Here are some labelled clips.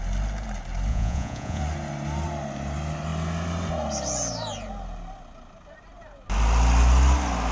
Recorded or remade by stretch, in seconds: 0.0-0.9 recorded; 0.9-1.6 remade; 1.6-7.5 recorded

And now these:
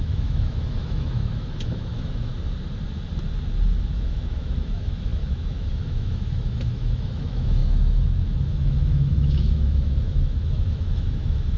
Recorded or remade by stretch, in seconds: 0.0-2.3 remade; 2.3-3.9 recorded; 3.9-11.6 remade